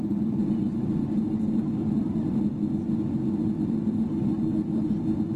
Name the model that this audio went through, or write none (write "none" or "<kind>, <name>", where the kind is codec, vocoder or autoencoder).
none